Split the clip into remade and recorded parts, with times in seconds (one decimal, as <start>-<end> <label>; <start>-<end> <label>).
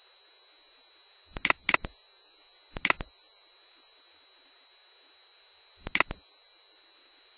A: 0.0-7.4 recorded